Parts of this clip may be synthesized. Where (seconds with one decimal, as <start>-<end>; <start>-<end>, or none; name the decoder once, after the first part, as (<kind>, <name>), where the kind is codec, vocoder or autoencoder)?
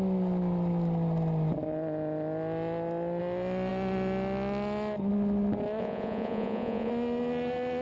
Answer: 5.8-6.9 (vocoder, Vocos)